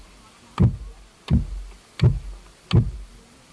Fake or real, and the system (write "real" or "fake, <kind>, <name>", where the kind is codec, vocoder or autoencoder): real